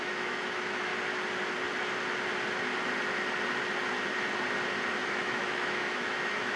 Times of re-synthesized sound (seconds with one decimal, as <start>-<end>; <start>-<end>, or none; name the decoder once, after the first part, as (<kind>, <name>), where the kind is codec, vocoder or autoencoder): 0.0-0.9 (autoencoder, DAC-VAE); 4.9-6.6